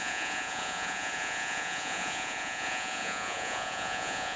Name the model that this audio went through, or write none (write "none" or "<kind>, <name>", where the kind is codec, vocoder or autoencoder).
vocoder, Vocos